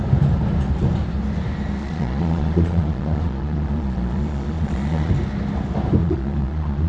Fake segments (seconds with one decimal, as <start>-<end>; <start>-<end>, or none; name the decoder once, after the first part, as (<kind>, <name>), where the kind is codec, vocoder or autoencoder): 1.8-5.1 (vocoder, Vocos); 6.0-6.9